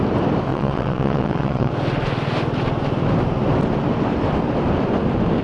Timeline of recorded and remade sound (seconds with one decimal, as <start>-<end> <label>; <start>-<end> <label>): 0.0-0.5 recorded; 0.5-1.7 remade; 1.7-5.4 recorded